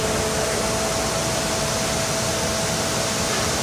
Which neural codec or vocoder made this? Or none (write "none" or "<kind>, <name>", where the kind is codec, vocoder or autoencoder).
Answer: none